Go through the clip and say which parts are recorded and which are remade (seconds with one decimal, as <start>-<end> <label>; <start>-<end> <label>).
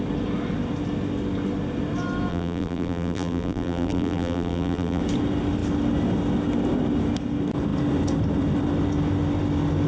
0.0-2.3 recorded; 2.3-5.0 remade; 5.0-9.9 recorded